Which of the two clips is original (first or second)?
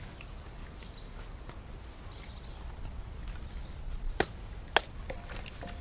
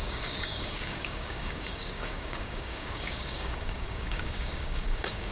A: first